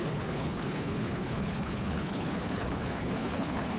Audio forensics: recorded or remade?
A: remade